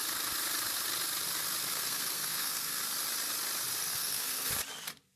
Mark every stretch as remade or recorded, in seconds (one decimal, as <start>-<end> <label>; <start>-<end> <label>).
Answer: 0.0-1.7 recorded; 1.7-2.8 remade; 2.8-3.9 recorded; 3.9-4.5 remade; 4.5-5.2 recorded